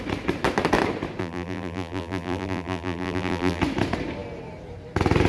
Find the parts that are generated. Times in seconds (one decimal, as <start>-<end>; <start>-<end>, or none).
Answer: 1.2-3.6